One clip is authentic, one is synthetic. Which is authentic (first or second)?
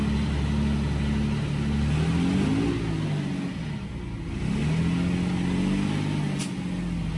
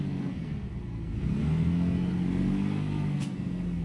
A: first